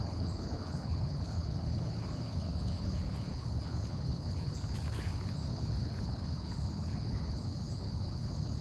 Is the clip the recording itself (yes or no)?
no